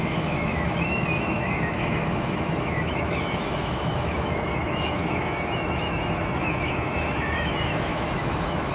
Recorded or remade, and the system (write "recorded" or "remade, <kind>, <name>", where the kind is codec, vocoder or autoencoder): remade, autoencoder, DAC-VAE